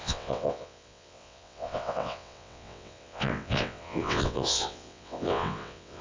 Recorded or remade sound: remade